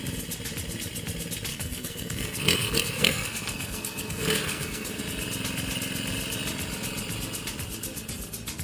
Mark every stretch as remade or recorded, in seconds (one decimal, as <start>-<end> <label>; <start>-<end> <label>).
0.0-1.5 recorded; 1.5-5.0 remade; 5.0-8.6 recorded